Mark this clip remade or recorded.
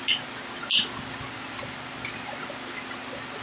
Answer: recorded